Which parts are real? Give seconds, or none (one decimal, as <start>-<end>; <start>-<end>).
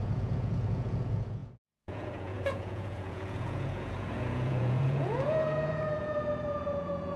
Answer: none